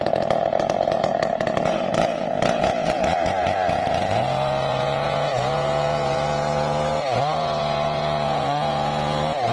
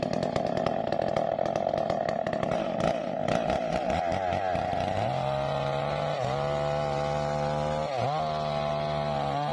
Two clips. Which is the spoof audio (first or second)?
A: first